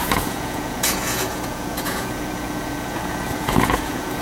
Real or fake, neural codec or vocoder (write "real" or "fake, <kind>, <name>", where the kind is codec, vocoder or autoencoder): fake, vocoder, Vocos